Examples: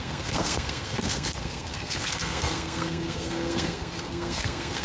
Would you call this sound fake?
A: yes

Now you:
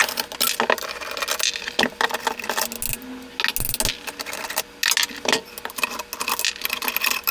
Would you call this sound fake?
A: no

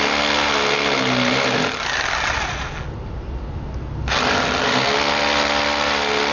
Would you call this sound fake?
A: no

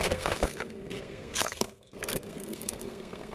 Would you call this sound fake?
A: yes